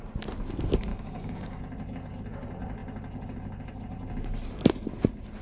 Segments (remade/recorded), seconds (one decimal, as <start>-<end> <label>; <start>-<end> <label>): 0.0-0.9 recorded; 0.9-1.6 remade; 1.6-5.4 recorded